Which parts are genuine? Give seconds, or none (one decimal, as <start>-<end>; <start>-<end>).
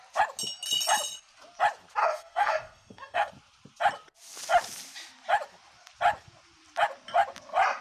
0.0-2.0; 3.3-7.8